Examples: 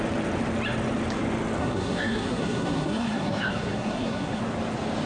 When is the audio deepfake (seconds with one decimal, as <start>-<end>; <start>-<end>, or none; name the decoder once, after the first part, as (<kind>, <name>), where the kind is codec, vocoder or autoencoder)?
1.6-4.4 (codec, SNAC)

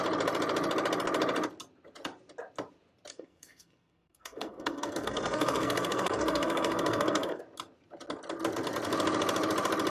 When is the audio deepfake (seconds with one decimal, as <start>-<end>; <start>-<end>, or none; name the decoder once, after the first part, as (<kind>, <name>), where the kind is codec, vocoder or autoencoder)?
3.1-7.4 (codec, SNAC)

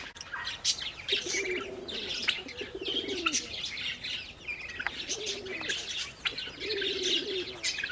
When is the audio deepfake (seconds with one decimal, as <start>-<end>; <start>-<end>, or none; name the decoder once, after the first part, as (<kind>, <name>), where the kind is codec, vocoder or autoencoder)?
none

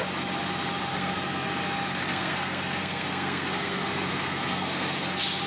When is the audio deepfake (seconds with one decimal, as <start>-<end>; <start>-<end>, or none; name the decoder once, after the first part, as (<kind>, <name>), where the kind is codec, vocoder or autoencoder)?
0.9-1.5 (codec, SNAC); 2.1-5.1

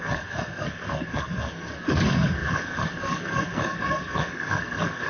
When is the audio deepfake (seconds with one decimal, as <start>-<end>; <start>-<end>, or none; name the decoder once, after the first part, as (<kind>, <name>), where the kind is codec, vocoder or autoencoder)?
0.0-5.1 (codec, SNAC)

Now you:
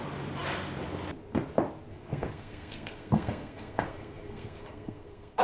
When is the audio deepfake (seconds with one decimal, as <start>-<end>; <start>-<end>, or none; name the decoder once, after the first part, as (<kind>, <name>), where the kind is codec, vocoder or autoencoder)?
1.9-5.4 (codec, SNAC)

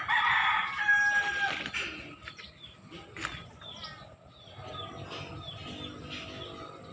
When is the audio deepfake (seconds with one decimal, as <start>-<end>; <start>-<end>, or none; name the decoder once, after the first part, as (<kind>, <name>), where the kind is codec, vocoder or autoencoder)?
none

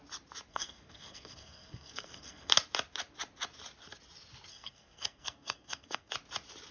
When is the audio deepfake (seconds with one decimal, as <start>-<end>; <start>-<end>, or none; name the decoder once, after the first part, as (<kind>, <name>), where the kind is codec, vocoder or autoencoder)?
0.5-2.5 (codec, SNAC); 4.5-6.1